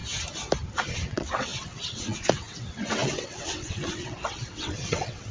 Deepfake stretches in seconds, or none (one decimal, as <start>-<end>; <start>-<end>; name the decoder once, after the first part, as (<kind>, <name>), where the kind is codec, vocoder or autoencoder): 0.9-5.3 (vocoder, WaveNeXt)